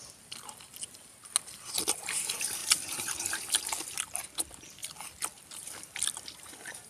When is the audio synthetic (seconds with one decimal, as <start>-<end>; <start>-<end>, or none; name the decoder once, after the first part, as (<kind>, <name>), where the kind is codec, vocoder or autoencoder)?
2.6-3.4 (vocoder, BigVGAN v2)